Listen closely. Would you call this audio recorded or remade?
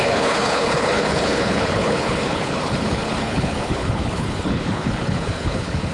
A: remade